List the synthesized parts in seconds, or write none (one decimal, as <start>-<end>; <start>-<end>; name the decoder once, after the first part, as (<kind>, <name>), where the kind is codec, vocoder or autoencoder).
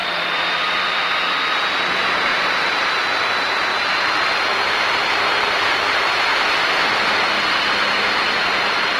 0.0-1.1 (vocoder, BigVGAN v2); 2.3-3.0